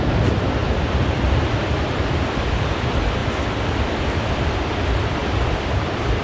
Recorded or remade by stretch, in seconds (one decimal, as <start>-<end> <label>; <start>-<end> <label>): 0.0-5.2 remade; 5.2-6.2 recorded